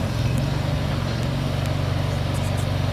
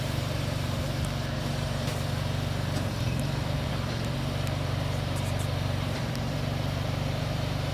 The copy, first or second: second